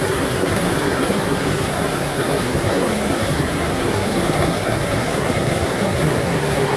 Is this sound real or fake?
fake